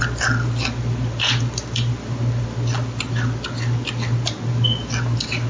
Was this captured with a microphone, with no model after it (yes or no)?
yes